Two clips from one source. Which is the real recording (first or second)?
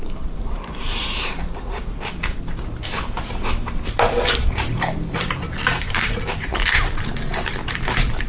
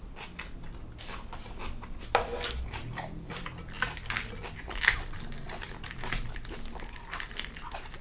second